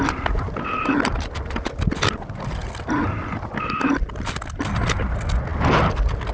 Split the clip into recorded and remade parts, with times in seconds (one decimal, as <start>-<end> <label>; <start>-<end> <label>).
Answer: 0.0-6.3 recorded